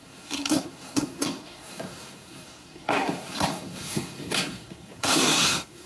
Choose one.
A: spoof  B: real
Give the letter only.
A